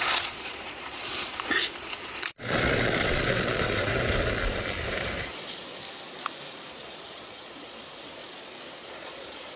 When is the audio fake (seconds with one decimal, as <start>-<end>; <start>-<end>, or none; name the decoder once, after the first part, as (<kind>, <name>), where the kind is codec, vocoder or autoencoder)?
0.0-3.9 (vocoder, Vocos); 4.8-5.8; 6.7-8.2; 8.9-9.6